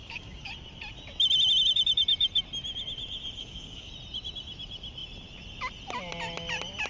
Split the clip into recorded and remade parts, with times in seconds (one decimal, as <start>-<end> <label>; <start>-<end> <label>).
0.0-0.5 remade; 0.5-3.4 recorded; 3.4-3.9 remade; 3.9-6.9 recorded